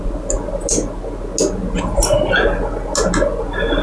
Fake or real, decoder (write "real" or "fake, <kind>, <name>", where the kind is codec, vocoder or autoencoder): real